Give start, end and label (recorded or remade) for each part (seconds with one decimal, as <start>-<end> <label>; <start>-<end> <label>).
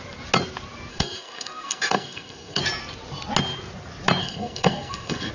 0.0-0.9 recorded; 0.9-2.6 remade; 2.6-4.2 recorded; 4.2-5.3 remade